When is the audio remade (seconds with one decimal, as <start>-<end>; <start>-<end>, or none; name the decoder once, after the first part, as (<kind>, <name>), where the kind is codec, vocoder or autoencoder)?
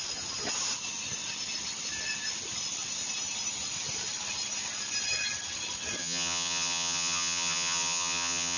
6.0-8.6 (vocoder, HiFi-GAN)